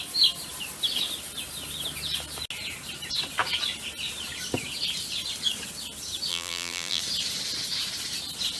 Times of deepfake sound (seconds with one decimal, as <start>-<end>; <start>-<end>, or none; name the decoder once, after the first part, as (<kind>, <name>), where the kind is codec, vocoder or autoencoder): 6.3-7.0 (vocoder, BigVGAN v2)